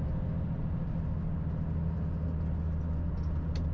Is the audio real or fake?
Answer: real